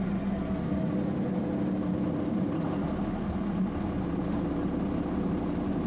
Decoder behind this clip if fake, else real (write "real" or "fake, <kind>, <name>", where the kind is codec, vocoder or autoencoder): real